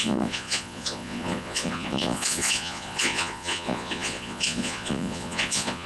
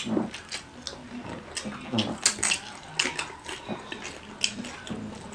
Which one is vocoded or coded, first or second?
first